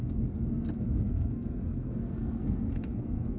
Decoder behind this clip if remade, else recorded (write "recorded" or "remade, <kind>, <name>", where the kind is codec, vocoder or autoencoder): remade, codec, SNAC